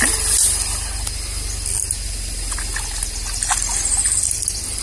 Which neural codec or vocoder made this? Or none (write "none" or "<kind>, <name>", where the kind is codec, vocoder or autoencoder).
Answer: none